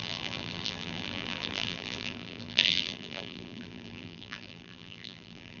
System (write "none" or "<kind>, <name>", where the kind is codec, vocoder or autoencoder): vocoder, BigVGAN v2